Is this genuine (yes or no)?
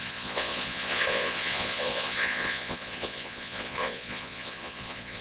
no